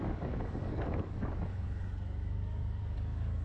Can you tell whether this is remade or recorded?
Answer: remade